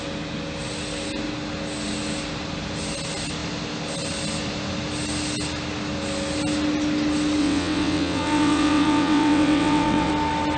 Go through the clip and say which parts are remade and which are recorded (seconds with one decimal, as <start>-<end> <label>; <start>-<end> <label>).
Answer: 0.0-7.4 recorded; 7.4-10.1 remade; 10.1-10.6 recorded